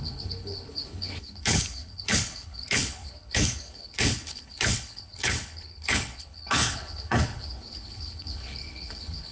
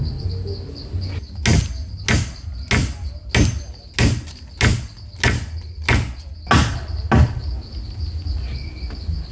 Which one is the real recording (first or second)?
second